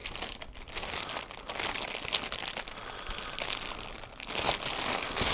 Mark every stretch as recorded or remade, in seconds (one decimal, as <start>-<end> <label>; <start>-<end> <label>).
0.0-5.3 recorded